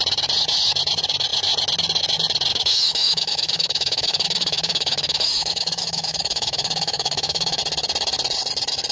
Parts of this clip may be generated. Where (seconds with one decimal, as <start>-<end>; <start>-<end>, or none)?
2.5-7.6